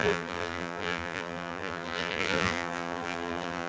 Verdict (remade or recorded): remade